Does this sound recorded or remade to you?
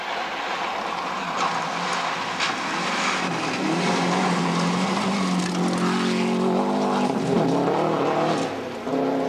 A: recorded